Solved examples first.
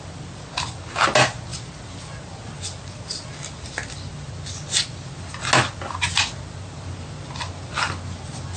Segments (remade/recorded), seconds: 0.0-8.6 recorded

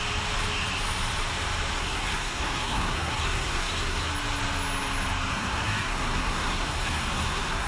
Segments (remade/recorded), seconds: 0.0-1.8 recorded; 1.8-4.1 remade; 4.1-5.3 recorded; 5.3-7.7 remade

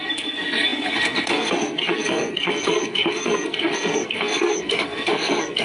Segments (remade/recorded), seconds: 0.0-5.6 remade

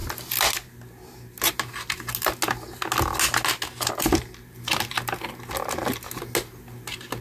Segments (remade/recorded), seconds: 0.0-7.2 recorded

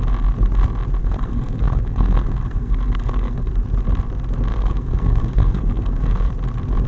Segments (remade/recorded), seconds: 0.0-1.0 recorded; 1.0-3.5 remade; 3.5-4.5 recorded; 4.5-6.3 remade; 6.3-6.9 recorded

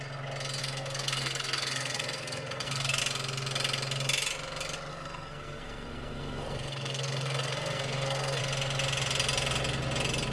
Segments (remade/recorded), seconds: 0.0-0.6 recorded; 0.6-3.0 remade; 3.0-4.9 recorded; 4.9-8.4 remade; 8.4-10.3 recorded